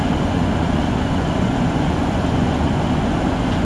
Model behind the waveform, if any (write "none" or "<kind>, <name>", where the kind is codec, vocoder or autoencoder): vocoder, Vocos